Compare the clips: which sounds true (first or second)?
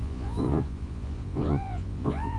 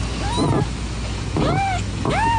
second